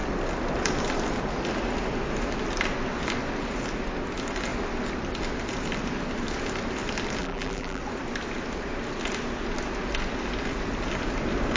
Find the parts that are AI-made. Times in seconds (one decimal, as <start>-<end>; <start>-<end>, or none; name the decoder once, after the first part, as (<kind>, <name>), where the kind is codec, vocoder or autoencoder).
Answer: 7.2-7.8 (vocoder, BigVGAN v2)